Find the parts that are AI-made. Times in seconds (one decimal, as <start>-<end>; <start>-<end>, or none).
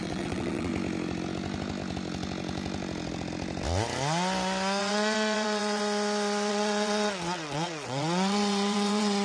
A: 0.0-0.7; 4.8-5.8; 6.5-9.2